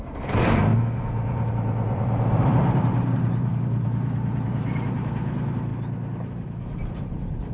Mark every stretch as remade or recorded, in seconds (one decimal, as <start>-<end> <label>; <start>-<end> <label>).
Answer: 0.0-5.7 remade; 5.7-6.3 recorded; 6.3-7.5 remade